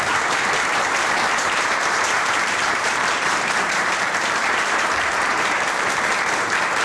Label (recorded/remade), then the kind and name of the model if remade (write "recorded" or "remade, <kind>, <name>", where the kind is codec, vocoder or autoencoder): remade, vocoder, BigVGAN v2